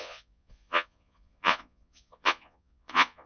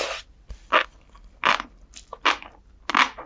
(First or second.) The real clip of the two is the second